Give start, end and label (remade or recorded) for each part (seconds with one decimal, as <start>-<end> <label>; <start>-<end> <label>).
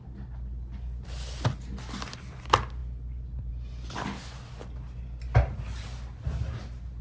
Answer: 0.0-7.0 recorded